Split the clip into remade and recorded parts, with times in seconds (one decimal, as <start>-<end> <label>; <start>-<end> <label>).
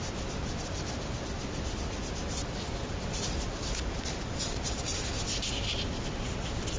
0.0-6.8 recorded